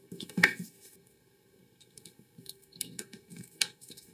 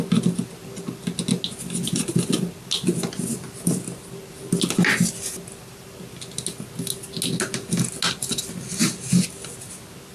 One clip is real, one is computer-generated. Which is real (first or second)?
second